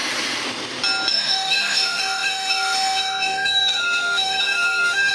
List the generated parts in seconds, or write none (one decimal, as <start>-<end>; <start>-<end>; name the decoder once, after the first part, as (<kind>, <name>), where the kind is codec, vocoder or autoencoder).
1.1-5.1 (autoencoder, DAC-VAE)